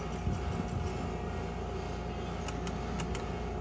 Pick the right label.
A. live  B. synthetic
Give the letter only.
A